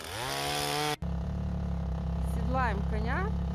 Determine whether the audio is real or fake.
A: real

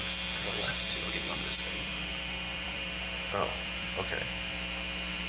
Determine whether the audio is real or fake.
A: fake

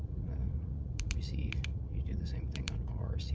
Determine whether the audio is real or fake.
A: fake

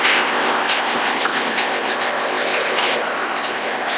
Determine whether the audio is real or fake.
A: fake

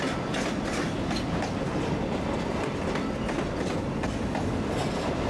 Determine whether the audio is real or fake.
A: real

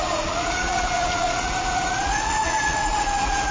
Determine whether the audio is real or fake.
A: fake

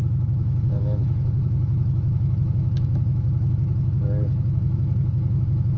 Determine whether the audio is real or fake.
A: fake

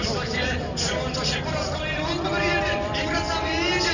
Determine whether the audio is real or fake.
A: real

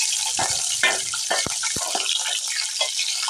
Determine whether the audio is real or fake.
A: real